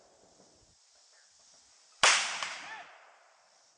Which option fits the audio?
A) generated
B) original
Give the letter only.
B